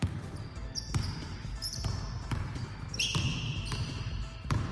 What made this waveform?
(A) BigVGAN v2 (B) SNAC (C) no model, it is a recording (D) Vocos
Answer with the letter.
A